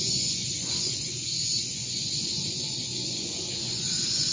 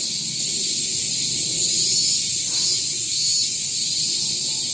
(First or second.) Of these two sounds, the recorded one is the second